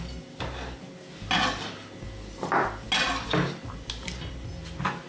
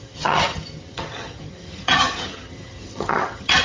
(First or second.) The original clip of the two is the first